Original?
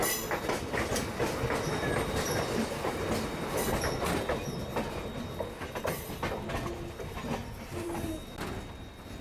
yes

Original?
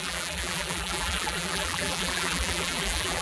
no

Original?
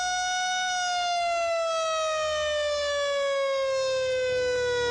yes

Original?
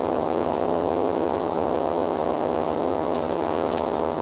no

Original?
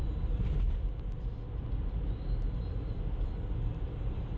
yes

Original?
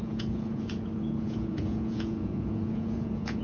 no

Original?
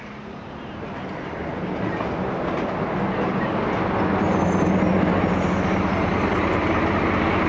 yes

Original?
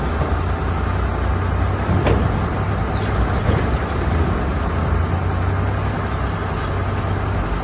yes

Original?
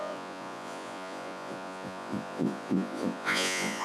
no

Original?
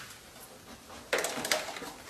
yes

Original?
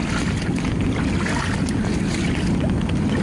yes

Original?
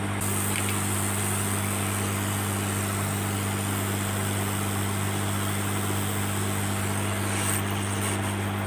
yes